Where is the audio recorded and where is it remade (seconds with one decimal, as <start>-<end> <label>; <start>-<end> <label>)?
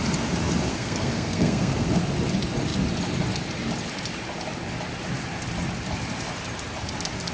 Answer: 0.0-0.7 recorded; 0.7-2.0 remade; 2.0-7.3 recorded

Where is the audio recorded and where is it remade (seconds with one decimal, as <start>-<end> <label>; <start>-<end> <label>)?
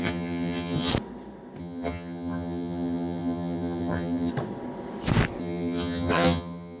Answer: 0.0-0.9 remade; 0.9-1.6 recorded; 1.6-4.3 remade; 4.3-5.4 recorded; 5.4-6.8 remade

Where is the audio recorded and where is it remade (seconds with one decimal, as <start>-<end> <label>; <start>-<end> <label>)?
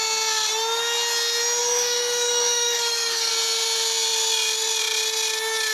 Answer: 0.0-1.6 recorded; 1.6-3.3 remade; 3.3-5.7 recorded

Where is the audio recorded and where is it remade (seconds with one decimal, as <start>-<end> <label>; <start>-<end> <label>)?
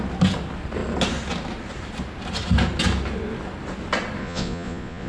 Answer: 0.0-4.2 recorded; 4.2-5.1 remade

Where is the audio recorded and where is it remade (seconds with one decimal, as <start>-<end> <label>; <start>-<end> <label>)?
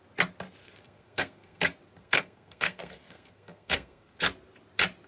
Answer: 0.0-0.6 recorded; 0.6-1.6 remade; 1.6-2.0 recorded; 2.0-4.2 remade; 4.2-5.1 recorded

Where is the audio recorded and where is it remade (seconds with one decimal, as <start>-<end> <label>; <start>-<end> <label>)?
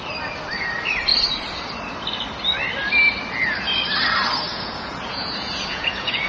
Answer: 0.0-4.5 recorded; 4.5-6.3 remade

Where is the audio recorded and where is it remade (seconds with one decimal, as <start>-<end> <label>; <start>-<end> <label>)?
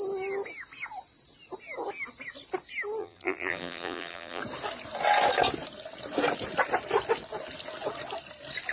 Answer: 0.0-3.0 recorded; 3.0-4.4 remade; 4.4-8.7 recorded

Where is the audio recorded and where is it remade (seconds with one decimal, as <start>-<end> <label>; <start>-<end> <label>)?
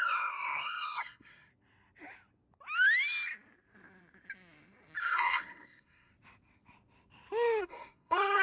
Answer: 0.0-1.5 remade; 1.5-5.0 recorded; 5.0-6.1 remade; 6.1-7.6 recorded; 7.6-8.4 remade